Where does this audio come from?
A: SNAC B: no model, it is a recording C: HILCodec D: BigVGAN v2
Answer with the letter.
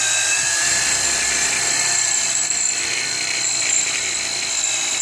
D